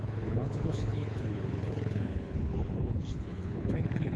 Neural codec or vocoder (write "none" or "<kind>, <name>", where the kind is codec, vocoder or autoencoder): codec, HILCodec